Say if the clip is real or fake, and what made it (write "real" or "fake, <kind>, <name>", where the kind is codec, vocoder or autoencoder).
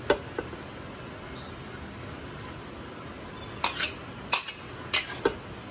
real